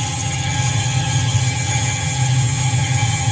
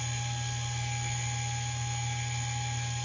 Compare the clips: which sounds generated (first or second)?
first